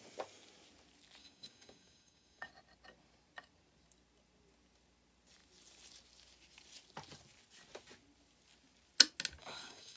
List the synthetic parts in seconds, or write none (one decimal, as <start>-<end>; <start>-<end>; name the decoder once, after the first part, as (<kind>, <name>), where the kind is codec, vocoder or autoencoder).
1.2-2.5 (codec, DAC); 9.4-10.0

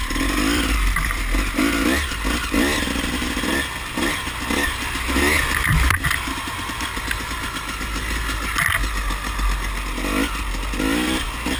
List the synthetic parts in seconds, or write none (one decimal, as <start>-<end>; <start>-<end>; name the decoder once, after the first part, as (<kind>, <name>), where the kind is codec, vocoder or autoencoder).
0.0-1.2 (vocoder, BigVGAN v2)

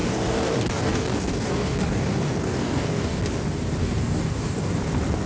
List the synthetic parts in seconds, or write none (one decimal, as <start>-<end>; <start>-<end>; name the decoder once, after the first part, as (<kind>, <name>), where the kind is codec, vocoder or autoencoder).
0.0-3.2 (codec, DAC); 3.8-4.7